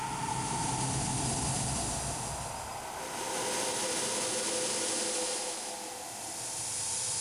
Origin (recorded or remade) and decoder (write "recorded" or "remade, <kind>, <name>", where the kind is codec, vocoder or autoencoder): recorded